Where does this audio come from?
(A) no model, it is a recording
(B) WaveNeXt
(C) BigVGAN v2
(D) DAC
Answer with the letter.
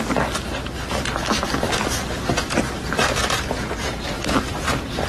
C